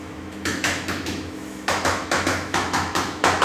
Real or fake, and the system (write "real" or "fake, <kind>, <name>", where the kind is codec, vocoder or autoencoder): fake, autoencoder, DAC-VAE